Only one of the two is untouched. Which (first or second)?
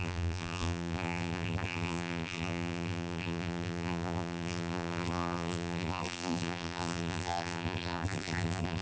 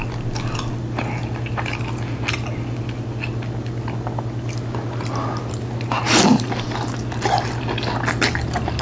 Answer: second